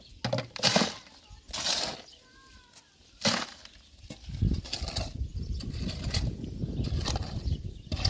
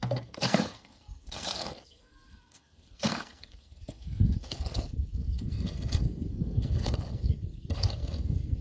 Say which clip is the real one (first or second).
first